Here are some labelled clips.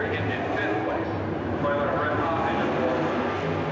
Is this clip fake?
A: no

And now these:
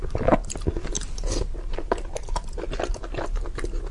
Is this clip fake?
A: no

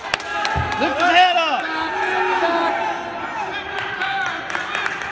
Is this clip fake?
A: no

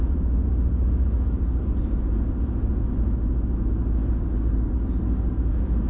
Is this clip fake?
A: no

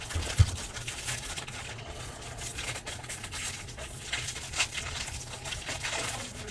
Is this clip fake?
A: yes